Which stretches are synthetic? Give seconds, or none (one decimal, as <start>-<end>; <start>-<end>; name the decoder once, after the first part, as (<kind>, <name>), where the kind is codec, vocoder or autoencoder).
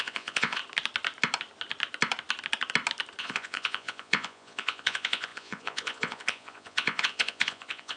0.0-0.6 (vocoder, Vocos); 3.2-8.0